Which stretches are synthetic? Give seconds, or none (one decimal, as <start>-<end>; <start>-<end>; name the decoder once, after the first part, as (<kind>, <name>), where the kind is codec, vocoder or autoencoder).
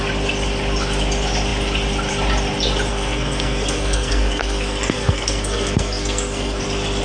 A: 2.9-6.6 (codec, SNAC)